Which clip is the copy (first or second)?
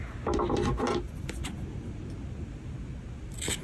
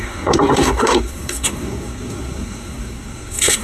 second